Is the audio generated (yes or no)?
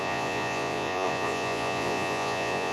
yes